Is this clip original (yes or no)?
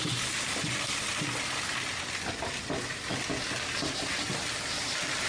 yes